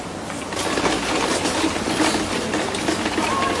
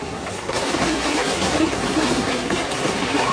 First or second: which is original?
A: first